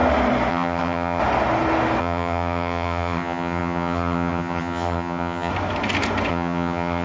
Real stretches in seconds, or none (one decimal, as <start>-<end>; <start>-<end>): 0.0-0.5; 1.2-2.0; 5.5-6.3